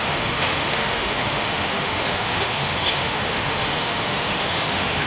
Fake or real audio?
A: fake